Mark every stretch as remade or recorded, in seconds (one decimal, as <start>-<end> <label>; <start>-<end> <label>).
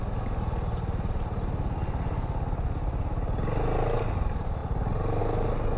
0.0-5.8 recorded